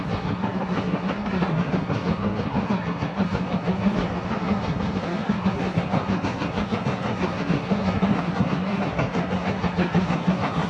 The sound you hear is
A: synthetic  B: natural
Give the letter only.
A